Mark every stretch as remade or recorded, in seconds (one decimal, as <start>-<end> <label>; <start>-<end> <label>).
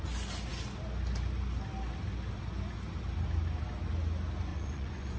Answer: 0.0-4.5 recorded; 4.5-5.2 remade